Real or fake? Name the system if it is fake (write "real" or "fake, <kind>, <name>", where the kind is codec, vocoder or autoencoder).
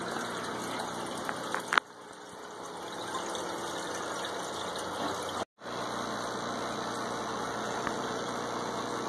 real